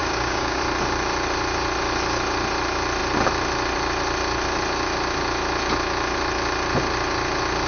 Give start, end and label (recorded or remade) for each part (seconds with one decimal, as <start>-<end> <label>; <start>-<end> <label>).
0.0-0.6 remade; 0.6-7.7 recorded